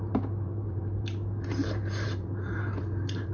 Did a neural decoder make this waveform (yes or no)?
yes